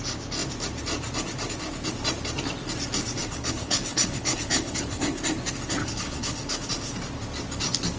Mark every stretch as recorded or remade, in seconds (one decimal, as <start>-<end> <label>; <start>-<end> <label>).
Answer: 0.0-3.2 recorded; 3.2-5.2 remade; 5.2-5.8 recorded; 5.8-6.7 remade; 6.7-8.0 recorded